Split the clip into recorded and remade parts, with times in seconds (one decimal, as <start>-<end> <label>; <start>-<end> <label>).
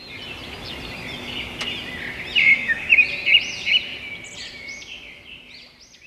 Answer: 0.0-2.4 recorded; 2.4-2.9 remade; 2.9-6.1 recorded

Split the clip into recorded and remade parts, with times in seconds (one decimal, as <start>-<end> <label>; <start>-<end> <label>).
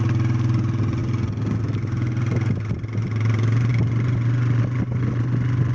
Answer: 0.0-5.7 recorded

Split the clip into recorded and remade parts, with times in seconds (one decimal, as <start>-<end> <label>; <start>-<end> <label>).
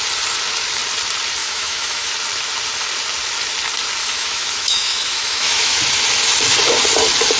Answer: 0.0-1.4 recorded; 1.4-2.1 remade; 2.1-4.0 recorded; 4.0-5.8 remade; 5.8-7.4 recorded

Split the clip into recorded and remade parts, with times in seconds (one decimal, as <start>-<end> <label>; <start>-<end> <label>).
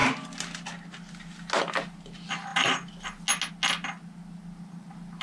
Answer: 0.0-5.2 recorded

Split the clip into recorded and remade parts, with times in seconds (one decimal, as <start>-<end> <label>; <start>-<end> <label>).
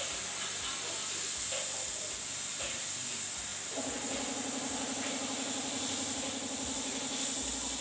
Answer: 0.0-7.8 recorded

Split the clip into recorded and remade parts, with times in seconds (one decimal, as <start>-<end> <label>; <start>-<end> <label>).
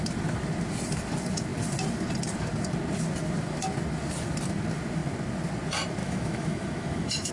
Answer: 0.0-6.0 recorded; 6.0-7.3 remade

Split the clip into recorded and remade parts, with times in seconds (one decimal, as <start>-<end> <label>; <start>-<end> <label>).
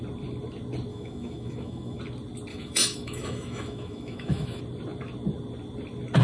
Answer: 0.0-0.9 recorded; 0.9-2.0 remade; 2.0-2.5 recorded; 2.5-4.6 remade; 4.6-6.2 recorded